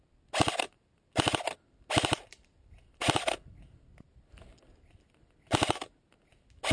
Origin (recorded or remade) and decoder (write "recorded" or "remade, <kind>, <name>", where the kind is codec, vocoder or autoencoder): recorded